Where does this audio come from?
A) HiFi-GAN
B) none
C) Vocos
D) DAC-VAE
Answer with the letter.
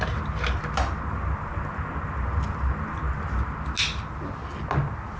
B